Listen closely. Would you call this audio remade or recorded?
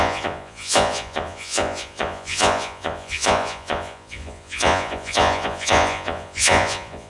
remade